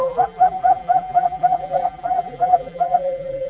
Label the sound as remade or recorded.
remade